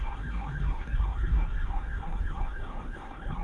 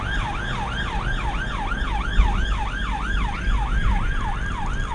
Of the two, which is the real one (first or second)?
second